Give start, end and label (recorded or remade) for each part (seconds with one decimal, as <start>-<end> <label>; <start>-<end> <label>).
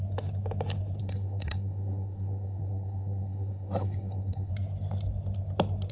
0.0-1.0 recorded; 1.0-4.5 remade; 4.5-5.9 recorded